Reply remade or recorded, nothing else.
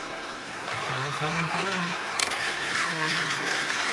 remade